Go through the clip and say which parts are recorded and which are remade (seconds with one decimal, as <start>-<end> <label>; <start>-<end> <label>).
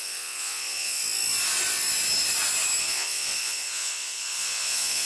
0.0-1.0 remade; 1.0-2.8 recorded; 2.8-5.1 remade